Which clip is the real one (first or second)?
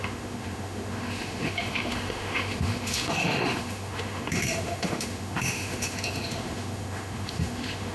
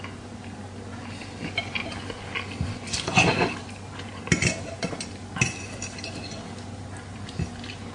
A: second